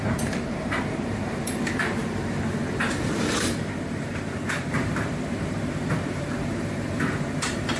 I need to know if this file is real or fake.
fake